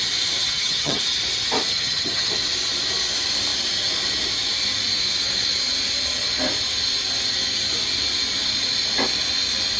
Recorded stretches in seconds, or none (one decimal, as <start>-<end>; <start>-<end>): 0.0-0.4; 1.0-1.7; 2.3-9.8